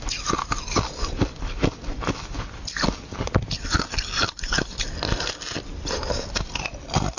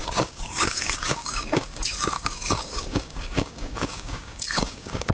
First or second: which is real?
first